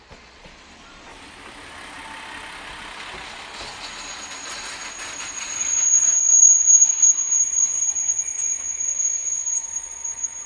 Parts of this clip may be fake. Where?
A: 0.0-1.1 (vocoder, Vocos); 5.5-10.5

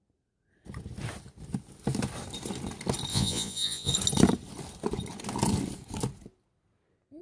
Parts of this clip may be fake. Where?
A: 3.1-3.9 (vocoder, Vocos)

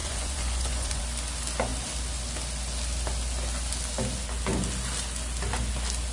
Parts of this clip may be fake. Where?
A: 0.0-1.0 (vocoder, Vocos)

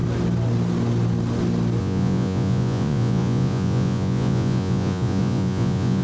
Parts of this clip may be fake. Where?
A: 1.8-6.0 (vocoder, Vocos)